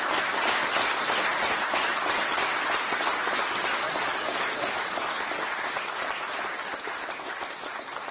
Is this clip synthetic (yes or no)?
no